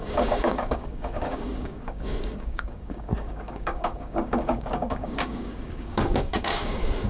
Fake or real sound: fake